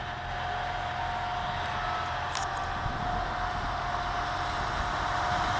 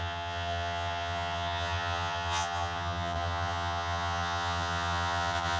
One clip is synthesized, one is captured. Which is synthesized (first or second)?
second